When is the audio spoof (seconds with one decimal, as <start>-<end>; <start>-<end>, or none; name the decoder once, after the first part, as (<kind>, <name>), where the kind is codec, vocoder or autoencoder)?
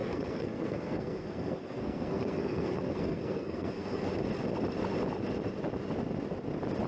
0.0-4.1 (codec, SNAC)